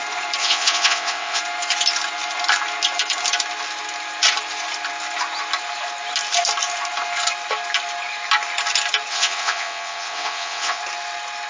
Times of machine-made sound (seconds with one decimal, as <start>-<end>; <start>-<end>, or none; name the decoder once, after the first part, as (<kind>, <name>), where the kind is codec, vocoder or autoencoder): 0.4-1.4 (vocoder, WaveNeXt); 9.1-10.8

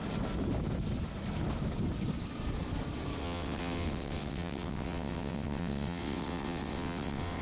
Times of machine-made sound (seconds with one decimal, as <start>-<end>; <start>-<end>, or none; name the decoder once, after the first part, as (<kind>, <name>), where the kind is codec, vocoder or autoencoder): 3.2-7.4 (vocoder, WaveNeXt)